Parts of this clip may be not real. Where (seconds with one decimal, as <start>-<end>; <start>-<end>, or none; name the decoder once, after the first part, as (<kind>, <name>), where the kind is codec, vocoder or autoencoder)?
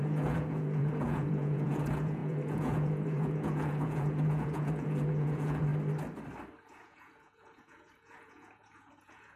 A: 0.0-5.7 (vocoder, Vocos); 6.7-9.4